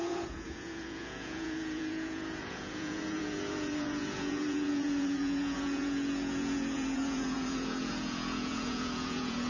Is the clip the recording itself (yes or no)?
no